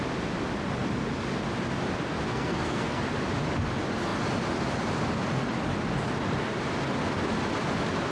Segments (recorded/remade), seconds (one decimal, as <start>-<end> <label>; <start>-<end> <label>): 0.0-2.3 recorded; 2.3-3.0 remade; 3.0-8.1 recorded

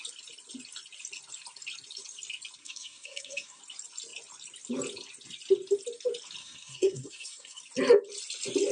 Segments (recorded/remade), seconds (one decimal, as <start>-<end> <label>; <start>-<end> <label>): 0.0-2.6 recorded; 2.6-3.6 remade; 3.6-6.4 recorded; 6.4-7.6 remade; 7.6-8.7 recorded

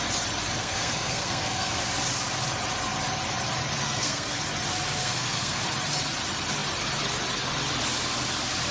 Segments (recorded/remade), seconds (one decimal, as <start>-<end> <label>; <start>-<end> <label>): 0.0-0.6 recorded; 0.6-1.8 remade; 1.8-3.8 recorded; 3.8-4.4 remade; 4.4-5.0 recorded; 5.0-5.6 remade; 5.6-8.7 recorded

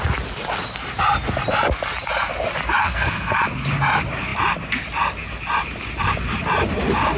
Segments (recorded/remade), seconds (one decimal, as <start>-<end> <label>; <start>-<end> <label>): 0.0-2.8 recorded; 2.8-3.4 remade; 3.4-7.2 recorded

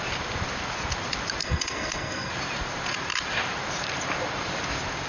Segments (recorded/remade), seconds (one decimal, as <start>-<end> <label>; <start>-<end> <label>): 0.0-1.4 recorded; 1.4-2.3 remade; 2.3-5.1 recorded

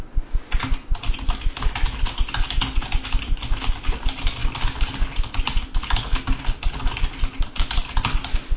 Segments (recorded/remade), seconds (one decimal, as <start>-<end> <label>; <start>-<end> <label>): 0.0-8.6 recorded